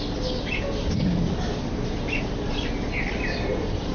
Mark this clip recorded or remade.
recorded